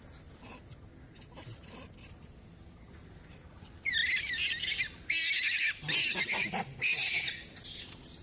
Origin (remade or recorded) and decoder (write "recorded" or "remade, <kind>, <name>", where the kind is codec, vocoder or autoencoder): recorded